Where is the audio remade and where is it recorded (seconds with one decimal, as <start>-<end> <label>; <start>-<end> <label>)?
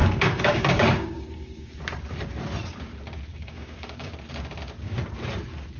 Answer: 0.0-1.8 remade; 1.8-3.3 recorded; 3.3-4.1 remade; 4.1-5.8 recorded